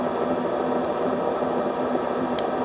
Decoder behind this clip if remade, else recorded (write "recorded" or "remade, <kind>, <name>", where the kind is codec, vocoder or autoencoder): recorded